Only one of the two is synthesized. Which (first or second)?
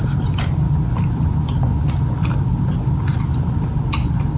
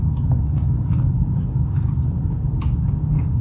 second